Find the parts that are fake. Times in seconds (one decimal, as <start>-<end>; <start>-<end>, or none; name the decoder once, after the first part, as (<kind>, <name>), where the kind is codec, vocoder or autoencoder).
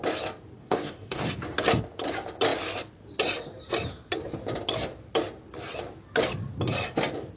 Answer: 0.6-1.2 (codec, DAC)